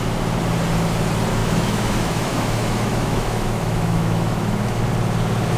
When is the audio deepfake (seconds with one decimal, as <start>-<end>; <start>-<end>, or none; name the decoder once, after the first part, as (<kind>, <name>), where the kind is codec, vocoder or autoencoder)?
1.4-4.8 (autoencoder, DAC-VAE)